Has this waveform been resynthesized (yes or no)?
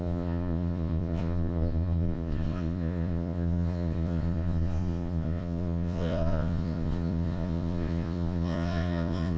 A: yes